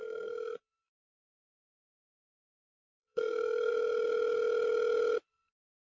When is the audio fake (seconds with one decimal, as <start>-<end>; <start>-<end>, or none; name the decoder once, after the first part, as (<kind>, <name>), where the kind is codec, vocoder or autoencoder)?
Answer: 0.0-3.7 (codec, SNAC); 5.3-5.8